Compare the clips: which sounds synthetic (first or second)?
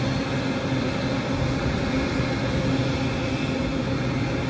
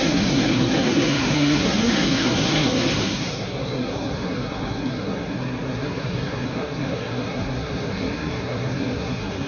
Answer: second